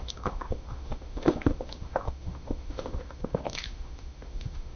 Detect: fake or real fake